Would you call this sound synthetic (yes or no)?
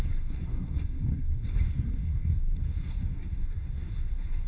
yes